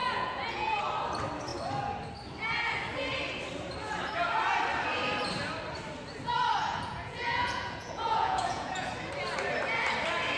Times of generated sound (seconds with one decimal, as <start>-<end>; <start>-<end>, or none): 0.0-0.8; 6.6-8.9